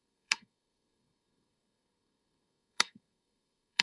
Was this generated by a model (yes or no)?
yes